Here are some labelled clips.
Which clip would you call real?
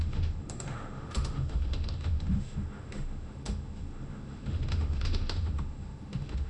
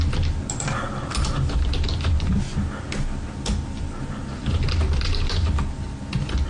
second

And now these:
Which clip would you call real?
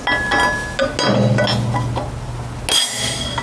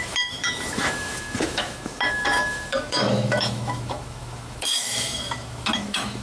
first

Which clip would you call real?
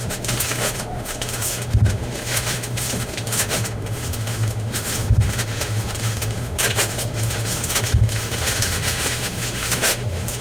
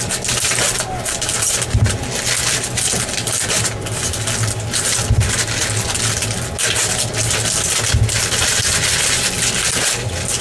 second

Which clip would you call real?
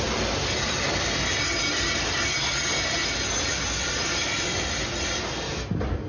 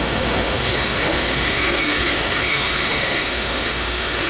first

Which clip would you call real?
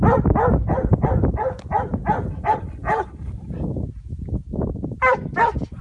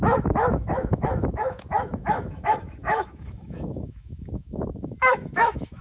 first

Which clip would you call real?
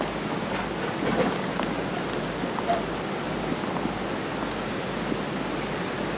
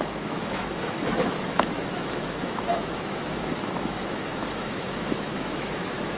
first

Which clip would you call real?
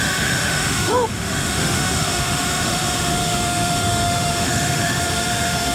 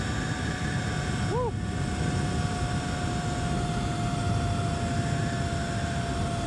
second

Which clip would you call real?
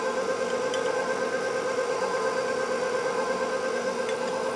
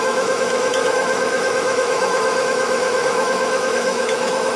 first